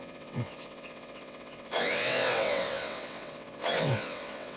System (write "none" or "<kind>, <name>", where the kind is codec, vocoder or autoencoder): vocoder, WaveNeXt